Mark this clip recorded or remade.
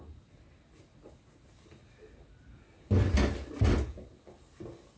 recorded